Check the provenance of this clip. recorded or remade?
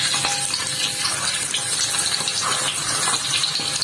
recorded